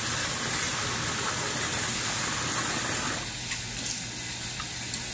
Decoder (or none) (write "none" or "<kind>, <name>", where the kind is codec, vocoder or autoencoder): none